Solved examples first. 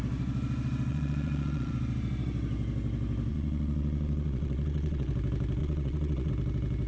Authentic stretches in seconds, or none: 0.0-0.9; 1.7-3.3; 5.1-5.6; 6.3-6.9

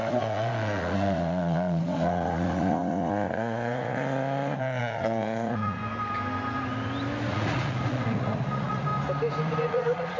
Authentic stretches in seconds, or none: 5.8-7.3; 8.9-9.4

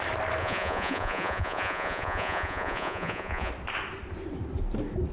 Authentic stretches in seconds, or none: 0.0-0.4; 3.5-5.1

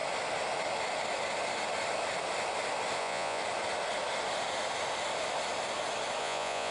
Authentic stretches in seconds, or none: 0.0-3.0; 3.4-6.2